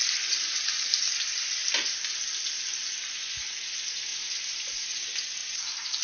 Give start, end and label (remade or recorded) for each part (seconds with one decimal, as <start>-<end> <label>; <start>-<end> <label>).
0.0-1.1 remade; 1.1-1.6 recorded; 1.6-2.3 remade; 2.3-5.4 recorded; 5.4-6.0 remade